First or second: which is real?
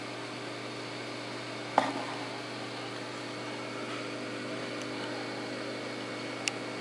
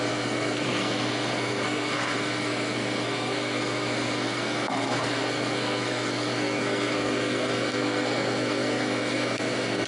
first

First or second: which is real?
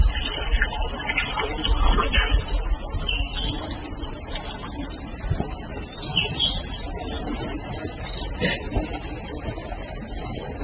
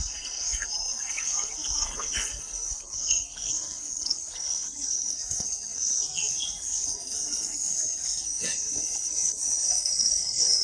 first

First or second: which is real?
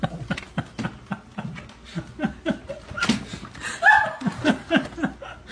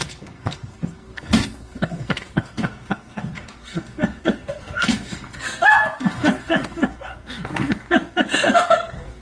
first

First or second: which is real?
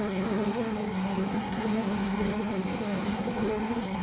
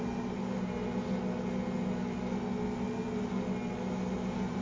second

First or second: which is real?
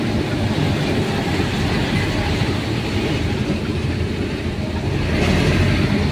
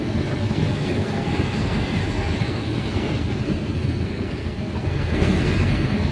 first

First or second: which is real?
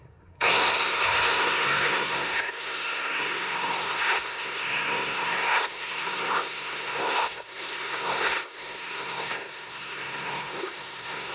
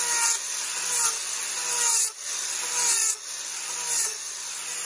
second